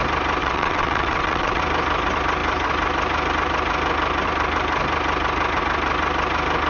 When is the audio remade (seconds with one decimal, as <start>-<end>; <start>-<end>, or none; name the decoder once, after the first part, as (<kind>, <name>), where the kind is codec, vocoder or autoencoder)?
0.4-1.6 (vocoder, WaveNeXt)